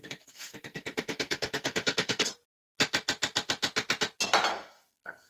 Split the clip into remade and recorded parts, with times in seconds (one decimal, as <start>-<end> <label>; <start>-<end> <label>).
0.0-2.3 remade; 2.3-4.5 recorded; 4.5-5.3 remade